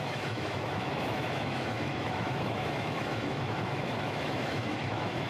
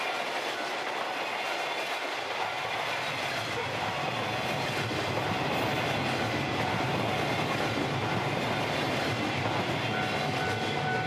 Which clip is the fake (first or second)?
first